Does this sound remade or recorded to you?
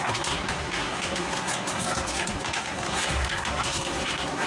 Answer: remade